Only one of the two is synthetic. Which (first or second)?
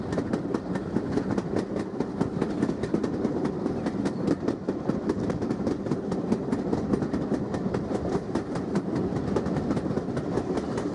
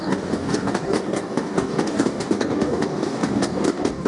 second